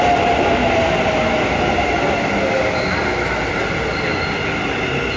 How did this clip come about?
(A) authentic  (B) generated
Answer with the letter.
A